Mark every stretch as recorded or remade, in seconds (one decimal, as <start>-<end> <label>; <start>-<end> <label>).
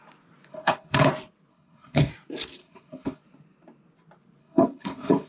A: 0.0-0.5 recorded; 0.5-1.1 remade; 1.1-1.5 recorded; 1.5-2.1 remade; 2.1-2.6 recorded; 2.6-3.2 remade; 3.2-4.4 recorded; 4.4-5.3 remade